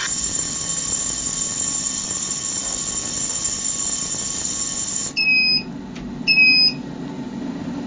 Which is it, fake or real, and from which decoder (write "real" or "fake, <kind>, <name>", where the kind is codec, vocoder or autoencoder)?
real